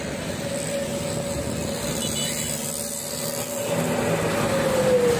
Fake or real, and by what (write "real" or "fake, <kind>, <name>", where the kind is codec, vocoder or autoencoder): real